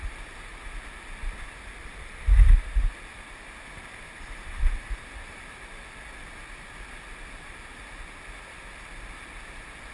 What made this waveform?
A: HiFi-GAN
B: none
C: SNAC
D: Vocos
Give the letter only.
B